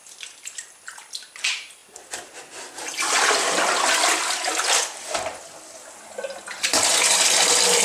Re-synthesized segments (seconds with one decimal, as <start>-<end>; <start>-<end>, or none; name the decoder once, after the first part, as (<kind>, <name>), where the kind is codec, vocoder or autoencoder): 1.8-5.8 (vocoder, BigVGAN v2)